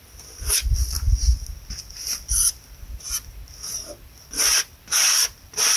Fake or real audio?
fake